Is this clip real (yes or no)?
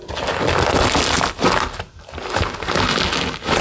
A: yes